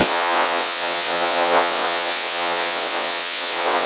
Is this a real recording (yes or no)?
no